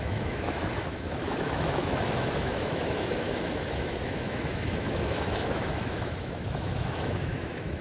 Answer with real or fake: fake